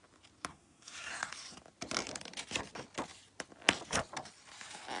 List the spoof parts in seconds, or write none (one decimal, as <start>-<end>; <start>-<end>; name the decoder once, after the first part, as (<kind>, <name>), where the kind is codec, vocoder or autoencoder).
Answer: 0.5-1.1 (codec, SNAC)